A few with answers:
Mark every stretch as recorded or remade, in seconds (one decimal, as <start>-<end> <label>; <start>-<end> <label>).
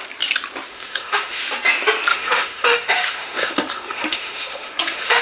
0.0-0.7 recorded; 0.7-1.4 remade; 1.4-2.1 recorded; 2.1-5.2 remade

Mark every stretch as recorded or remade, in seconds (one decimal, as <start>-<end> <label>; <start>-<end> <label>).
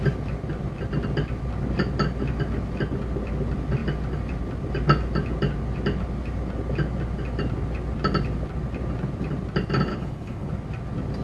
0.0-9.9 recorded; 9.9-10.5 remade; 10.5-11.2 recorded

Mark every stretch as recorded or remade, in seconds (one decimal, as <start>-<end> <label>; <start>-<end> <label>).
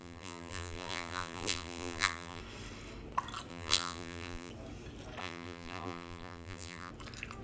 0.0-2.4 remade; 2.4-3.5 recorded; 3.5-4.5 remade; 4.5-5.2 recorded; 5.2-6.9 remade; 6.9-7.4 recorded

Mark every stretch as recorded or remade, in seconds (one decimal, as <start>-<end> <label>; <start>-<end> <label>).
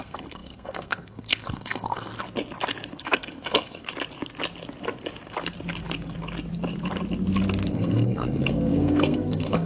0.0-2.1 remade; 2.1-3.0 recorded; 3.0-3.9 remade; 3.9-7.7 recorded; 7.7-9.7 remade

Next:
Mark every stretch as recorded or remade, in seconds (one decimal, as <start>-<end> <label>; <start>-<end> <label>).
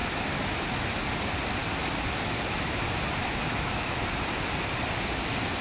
0.0-3.2 recorded; 3.2-4.0 remade; 4.0-5.6 recorded